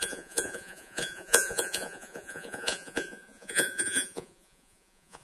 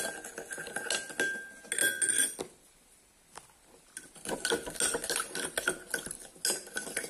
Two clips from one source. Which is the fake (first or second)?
first